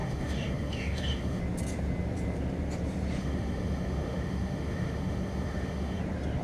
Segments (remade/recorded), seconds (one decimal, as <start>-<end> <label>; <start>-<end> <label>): 0.0-1.4 remade; 1.4-3.2 recorded; 3.2-6.0 remade; 6.0-6.4 recorded